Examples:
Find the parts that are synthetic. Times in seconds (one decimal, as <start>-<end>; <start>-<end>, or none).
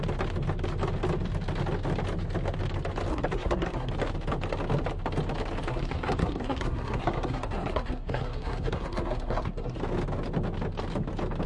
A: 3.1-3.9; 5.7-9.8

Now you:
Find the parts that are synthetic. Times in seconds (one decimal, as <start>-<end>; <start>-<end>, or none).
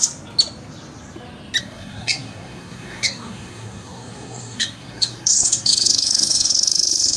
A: 1.6-7.2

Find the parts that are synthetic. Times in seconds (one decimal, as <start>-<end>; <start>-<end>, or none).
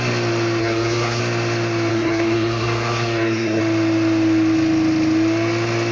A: 0.6-1.2; 1.9-3.6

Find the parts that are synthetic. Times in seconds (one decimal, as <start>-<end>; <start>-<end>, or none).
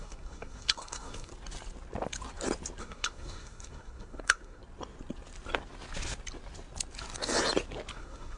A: 0.0-1.3; 2.8-4.6; 7.9-8.4